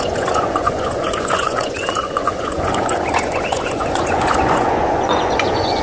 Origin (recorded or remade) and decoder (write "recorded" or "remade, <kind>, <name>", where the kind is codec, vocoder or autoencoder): remade, vocoder, Vocos